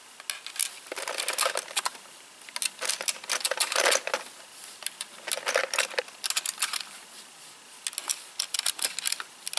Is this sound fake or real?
real